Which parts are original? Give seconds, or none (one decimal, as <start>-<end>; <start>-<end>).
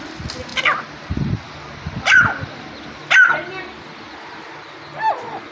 0.0-5.5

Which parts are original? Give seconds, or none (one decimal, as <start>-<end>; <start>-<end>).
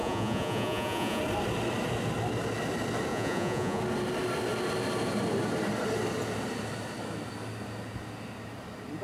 1.2-3.1; 3.8-9.0